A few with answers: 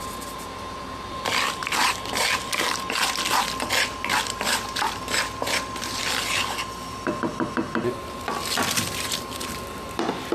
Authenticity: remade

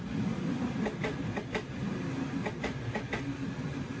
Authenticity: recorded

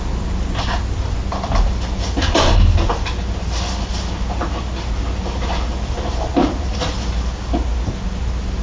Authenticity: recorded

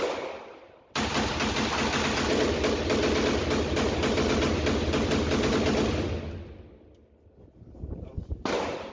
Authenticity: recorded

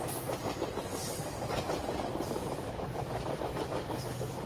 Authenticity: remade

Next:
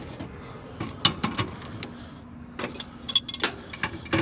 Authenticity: recorded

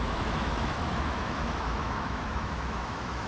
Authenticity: remade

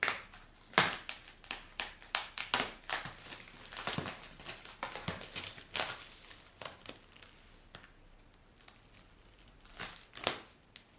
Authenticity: recorded